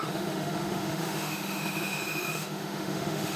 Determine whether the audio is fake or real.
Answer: fake